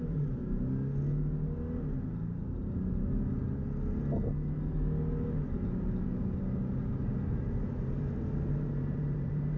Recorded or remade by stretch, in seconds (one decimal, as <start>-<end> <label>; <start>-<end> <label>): 0.0-0.4 remade; 0.4-2.2 recorded; 2.2-3.6 remade; 3.6-6.9 recorded; 6.9-9.6 remade